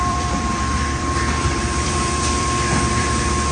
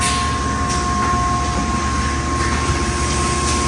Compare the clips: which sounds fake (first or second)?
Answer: first